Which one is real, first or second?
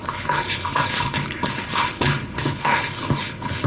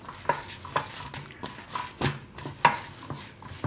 second